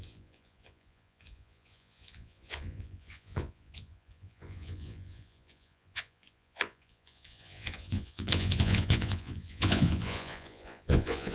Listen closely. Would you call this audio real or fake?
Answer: fake